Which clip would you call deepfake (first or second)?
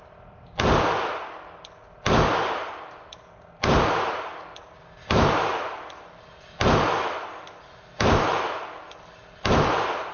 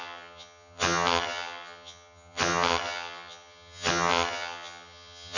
second